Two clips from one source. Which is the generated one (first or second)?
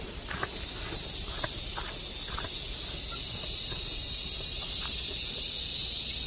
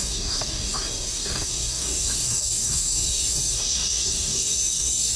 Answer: second